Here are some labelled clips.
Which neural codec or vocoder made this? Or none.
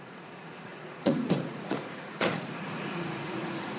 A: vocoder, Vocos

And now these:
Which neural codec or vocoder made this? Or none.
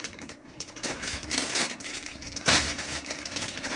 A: codec, SNAC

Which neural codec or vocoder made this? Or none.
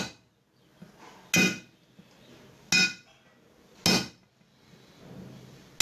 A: none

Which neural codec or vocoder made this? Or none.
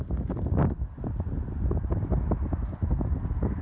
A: none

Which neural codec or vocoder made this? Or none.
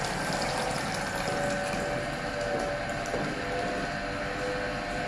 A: none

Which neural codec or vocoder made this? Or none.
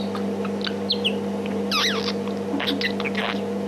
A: none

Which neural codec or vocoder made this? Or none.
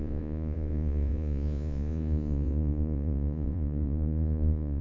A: vocoder, Vocos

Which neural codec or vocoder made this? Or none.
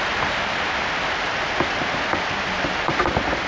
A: none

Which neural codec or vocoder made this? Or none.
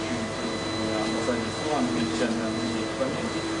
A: none